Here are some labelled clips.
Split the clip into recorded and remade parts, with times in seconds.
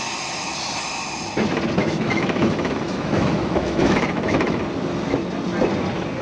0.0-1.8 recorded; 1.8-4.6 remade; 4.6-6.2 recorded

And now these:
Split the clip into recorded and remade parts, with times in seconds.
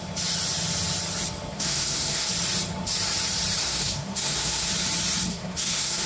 0.0-1.5 recorded; 1.5-2.3 remade; 2.3-3.6 recorded; 3.6-4.7 remade; 4.7-5.3 recorded; 5.3-6.1 remade